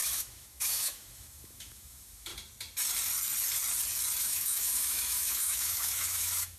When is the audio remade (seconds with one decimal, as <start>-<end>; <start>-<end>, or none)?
0.0-2.3; 4.2-6.6